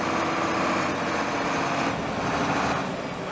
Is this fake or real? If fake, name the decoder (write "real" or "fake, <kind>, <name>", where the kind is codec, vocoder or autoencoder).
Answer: real